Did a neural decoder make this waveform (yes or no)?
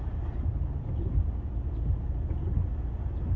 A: no